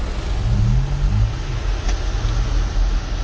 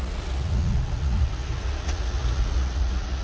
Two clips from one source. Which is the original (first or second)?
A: first